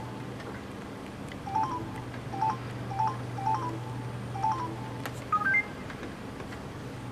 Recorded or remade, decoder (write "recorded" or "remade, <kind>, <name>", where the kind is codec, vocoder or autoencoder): recorded